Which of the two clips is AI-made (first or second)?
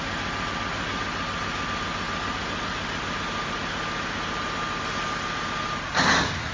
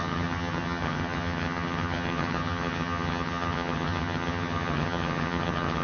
second